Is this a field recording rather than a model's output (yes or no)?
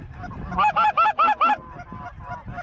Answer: yes